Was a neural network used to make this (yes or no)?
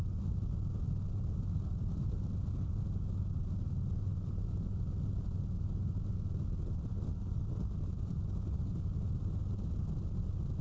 no